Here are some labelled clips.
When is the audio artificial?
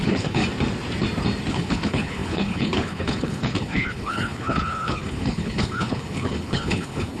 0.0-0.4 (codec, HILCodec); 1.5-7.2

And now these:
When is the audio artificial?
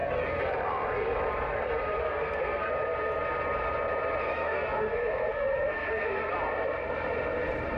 2.0-2.7 (codec, SNAC); 4.3-6.3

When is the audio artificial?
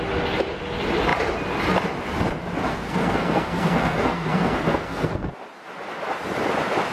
2.7-5.3 (codec, SNAC)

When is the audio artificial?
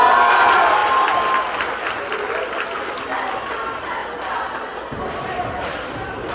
0.0-0.8 (vocoder, BigVGAN v2); 2.2-4.0; 5.0-6.3